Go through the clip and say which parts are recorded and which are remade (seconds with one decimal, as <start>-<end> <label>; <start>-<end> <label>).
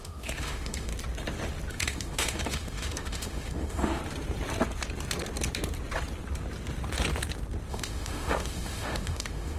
0.0-0.9 remade; 0.9-1.7 recorded; 1.7-4.0 remade; 4.0-7.7 recorded; 7.7-9.6 remade